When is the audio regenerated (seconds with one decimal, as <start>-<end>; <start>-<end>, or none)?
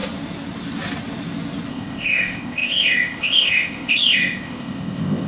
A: 1.7-5.3